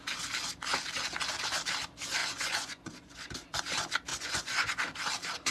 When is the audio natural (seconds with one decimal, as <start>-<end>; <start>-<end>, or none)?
0.0-2.2; 3.3-4.1; 4.8-5.5